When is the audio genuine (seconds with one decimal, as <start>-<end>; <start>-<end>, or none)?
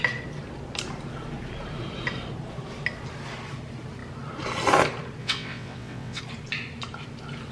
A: 0.0-5.2; 6.2-7.5